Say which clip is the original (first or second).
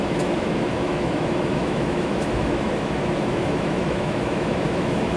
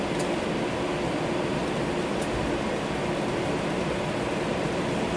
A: second